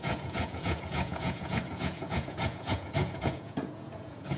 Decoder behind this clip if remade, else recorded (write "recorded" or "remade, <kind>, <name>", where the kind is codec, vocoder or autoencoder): remade, vocoder, Vocos